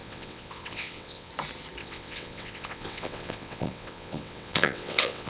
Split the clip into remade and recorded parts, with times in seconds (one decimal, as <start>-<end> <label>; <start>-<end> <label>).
0.0-1.3 remade; 1.3-1.8 recorded; 1.8-5.3 remade